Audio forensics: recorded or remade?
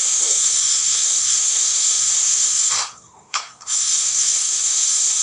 remade